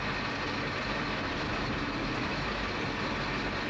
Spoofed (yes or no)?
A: no